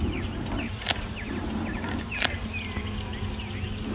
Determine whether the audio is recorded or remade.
recorded